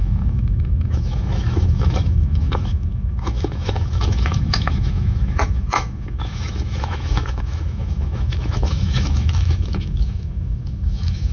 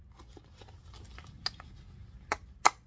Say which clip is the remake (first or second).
first